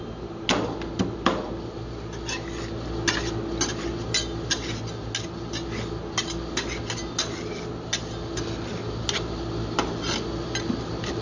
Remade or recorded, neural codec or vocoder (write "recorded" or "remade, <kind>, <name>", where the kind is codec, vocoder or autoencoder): recorded